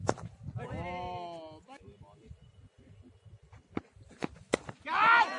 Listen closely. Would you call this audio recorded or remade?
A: recorded